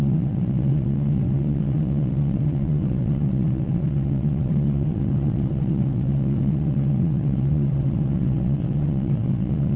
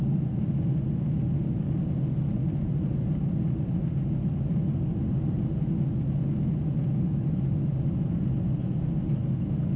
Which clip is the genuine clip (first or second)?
second